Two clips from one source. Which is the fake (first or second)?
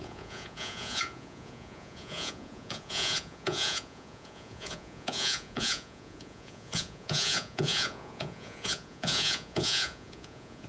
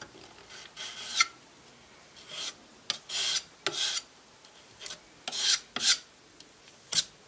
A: first